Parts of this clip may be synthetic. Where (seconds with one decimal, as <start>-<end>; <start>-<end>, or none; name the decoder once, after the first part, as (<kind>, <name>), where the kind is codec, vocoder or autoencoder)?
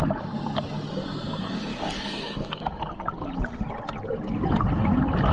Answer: 1.7-2.8 (codec, DAC)